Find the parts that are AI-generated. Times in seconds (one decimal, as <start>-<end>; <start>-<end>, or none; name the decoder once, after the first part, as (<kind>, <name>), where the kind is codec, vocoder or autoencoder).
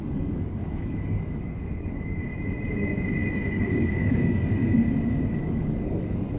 0.0-2.3 (codec, DAC); 3.5-4.6; 5.3-6.4